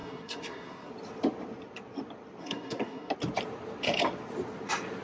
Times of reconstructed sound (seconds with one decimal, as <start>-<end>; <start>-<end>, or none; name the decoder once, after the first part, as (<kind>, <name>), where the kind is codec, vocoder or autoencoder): 0.0-0.9 (codec, SNAC); 2.4-3.1